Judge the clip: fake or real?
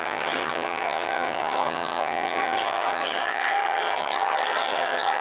fake